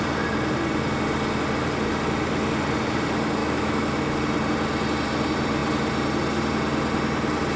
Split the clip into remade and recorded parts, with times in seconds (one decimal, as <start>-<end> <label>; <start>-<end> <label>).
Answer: 0.0-3.4 recorded; 3.4-4.2 remade; 4.2-7.6 recorded